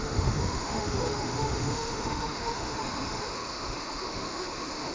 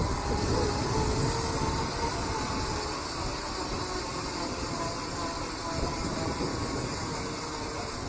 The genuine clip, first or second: second